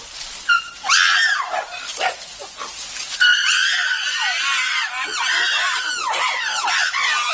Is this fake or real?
real